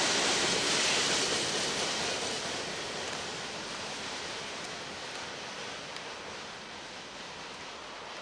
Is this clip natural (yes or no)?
yes